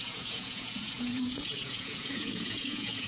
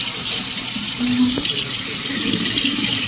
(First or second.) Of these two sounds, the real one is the second